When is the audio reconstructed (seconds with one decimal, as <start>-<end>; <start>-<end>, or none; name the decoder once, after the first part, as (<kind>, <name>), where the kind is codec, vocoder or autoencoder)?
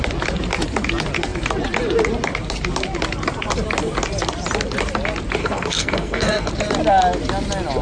5.4-6.5 (codec, SNAC)